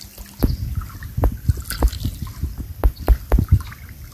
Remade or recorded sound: recorded